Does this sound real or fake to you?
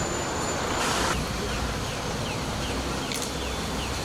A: real